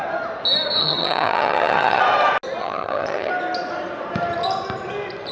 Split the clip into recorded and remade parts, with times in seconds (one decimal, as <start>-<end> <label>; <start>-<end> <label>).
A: 0.0-0.8 recorded; 0.8-2.0 remade; 2.0-2.6 recorded; 2.6-3.3 remade; 3.3-5.3 recorded